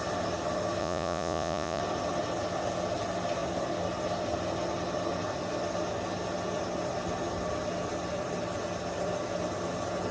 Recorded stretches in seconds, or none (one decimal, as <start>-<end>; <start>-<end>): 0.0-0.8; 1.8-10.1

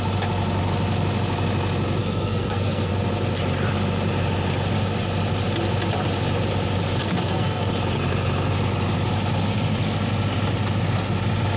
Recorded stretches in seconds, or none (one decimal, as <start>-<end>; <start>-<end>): 0.0-2.0; 2.9-7.0; 7.7-11.6

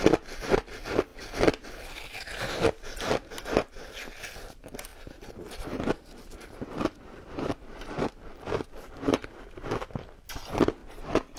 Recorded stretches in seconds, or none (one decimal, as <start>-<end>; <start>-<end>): 0.0-4.9; 9.7-11.4

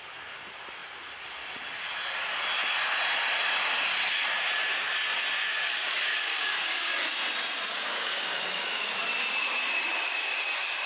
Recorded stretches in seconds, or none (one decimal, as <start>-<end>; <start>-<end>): 0.0-5.5; 7.1-7.7; 8.9-10.9

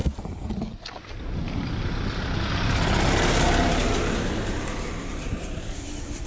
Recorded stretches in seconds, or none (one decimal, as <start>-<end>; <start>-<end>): 0.0-6.3